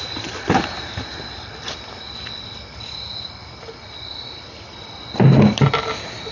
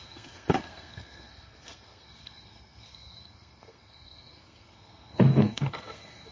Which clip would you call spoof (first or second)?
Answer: second